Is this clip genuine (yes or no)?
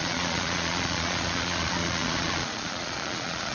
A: no